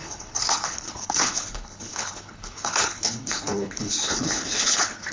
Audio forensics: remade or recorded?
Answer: remade